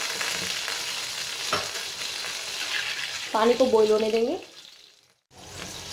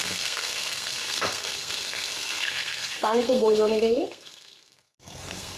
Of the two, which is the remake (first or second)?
second